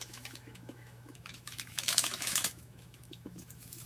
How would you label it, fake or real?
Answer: fake